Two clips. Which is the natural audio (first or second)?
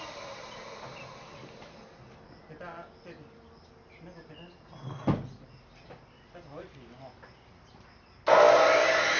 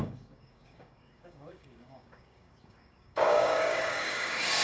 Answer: first